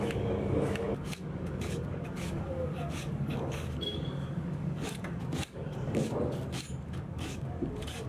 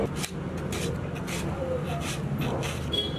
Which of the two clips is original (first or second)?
second